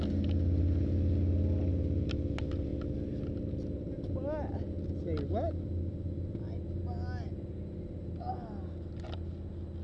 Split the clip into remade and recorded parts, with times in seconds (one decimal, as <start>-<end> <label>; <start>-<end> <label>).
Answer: 0.0-9.8 recorded